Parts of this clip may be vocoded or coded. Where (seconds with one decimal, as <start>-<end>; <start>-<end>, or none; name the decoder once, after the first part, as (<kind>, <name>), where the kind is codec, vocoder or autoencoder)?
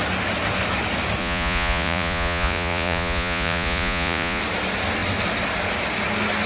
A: 1.2-4.4 (vocoder, Vocos)